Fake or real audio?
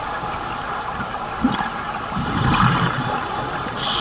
real